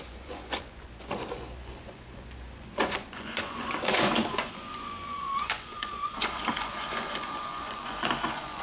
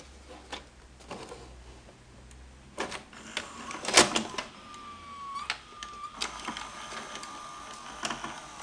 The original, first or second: second